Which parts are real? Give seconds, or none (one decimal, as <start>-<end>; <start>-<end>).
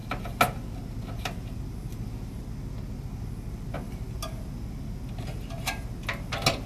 0.0-6.7